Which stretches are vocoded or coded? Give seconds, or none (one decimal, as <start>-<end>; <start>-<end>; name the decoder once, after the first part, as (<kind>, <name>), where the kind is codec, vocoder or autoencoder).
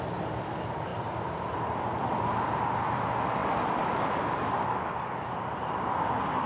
none